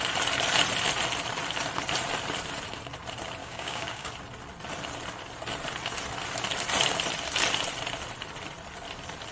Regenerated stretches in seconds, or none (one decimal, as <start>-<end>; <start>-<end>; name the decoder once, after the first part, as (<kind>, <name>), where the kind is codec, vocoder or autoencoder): 3.4-4.1 (codec, DAC)